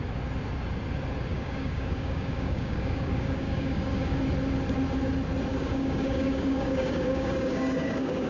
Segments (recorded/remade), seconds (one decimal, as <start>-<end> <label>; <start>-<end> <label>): 0.0-1.3 recorded; 1.3-4.2 remade; 4.2-5.5 recorded; 5.5-8.3 remade